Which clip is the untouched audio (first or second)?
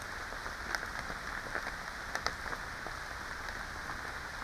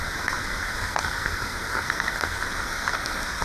first